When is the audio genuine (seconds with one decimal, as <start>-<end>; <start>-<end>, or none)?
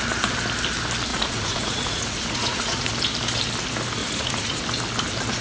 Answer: 0.0-1.1; 2.9-4.0; 4.6-5.4